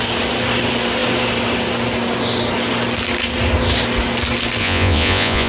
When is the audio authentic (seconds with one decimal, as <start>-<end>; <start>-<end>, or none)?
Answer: 0.0-4.6